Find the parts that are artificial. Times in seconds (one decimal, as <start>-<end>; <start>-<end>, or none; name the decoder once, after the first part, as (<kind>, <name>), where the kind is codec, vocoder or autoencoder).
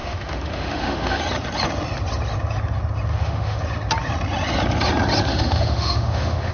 0.0-1.2 (autoencoder, DAC-VAE); 3.1-3.6; 5.3-6.5